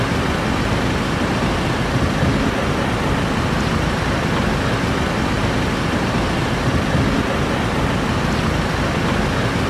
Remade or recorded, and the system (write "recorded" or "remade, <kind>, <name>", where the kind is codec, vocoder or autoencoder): recorded